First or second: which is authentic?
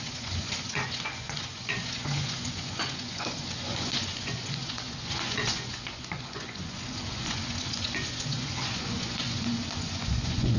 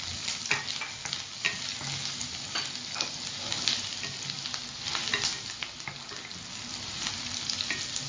second